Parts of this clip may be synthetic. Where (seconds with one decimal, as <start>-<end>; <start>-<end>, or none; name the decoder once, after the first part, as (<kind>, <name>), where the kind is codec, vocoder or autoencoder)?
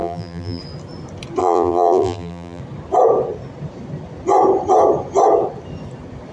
0.0-0.6 (vocoder, BigVGAN v2); 1.4-2.6